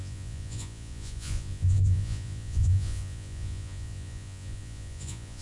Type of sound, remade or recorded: remade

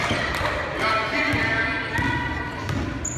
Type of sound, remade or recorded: recorded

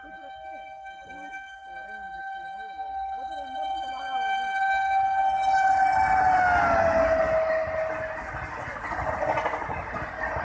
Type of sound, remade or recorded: recorded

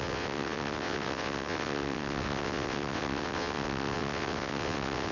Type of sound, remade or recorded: remade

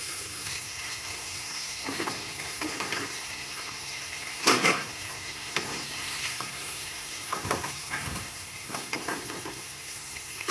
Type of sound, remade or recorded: remade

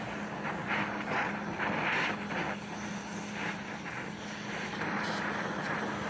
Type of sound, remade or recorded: recorded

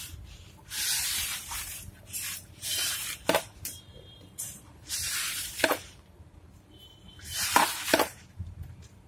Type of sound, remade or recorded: remade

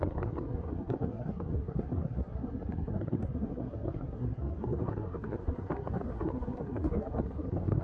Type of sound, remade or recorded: remade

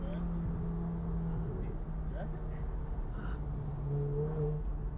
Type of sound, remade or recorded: recorded